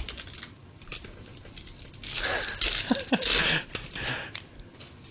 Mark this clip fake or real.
real